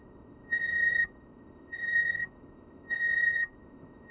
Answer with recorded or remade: remade